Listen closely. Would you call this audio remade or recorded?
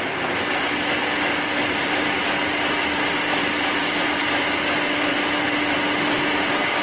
recorded